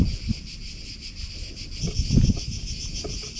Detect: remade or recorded recorded